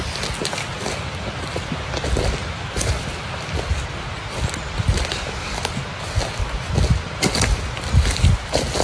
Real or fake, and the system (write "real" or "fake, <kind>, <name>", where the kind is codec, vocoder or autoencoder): real